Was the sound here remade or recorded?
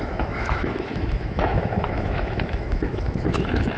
remade